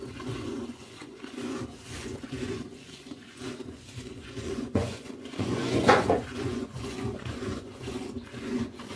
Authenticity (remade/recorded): remade